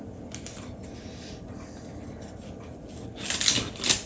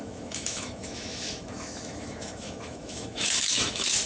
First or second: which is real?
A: first